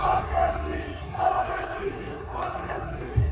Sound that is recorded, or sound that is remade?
remade